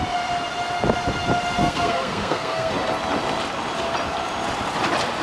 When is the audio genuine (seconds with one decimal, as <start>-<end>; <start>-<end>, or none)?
0.0-1.6; 2.7-5.2